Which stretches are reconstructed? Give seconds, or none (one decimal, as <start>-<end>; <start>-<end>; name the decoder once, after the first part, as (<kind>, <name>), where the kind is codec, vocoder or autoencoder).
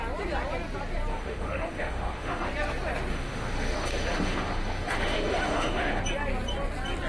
1.1-2.5 (autoencoder, DAC-VAE); 3.1-6.0